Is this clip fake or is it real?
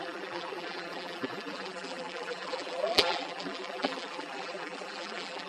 fake